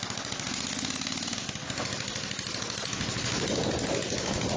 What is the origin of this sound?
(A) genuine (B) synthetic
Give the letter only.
A